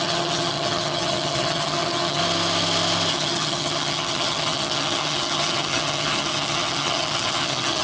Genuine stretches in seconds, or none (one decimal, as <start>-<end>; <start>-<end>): 2.2-3.1